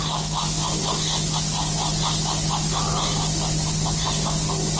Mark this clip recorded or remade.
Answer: recorded